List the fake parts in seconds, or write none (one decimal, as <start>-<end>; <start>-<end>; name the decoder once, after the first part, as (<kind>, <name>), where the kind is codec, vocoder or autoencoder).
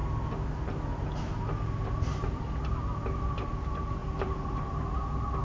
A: 4.0-4.9 (vocoder, BigVGAN v2)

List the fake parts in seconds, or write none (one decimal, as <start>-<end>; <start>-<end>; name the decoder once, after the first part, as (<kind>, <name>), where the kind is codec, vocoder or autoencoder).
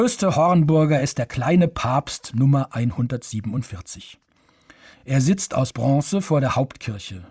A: 1.0-4.0 (vocoder, BigVGAN v2); 5.0-5.7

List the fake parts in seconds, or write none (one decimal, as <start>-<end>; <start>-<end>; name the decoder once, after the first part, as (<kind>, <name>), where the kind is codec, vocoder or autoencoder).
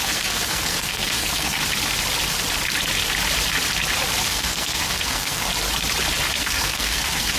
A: 0.0-1.6 (codec, SNAC); 4.3-5.5; 6.4-7.4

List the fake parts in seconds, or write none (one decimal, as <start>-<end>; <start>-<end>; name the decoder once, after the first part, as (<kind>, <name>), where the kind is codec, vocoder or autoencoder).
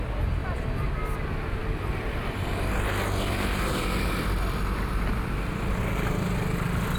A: 0.4-0.9 (vocoder, BigVGAN v2); 1.6-5.8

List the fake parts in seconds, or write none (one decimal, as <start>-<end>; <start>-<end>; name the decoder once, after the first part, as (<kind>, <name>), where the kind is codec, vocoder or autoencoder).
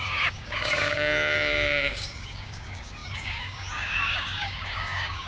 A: 0.0-5.3 (codec, DAC)